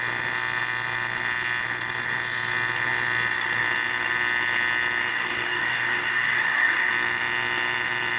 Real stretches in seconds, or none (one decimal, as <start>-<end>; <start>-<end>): 0.0-5.1; 6.9-8.2